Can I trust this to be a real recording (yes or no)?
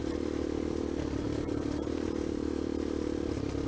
yes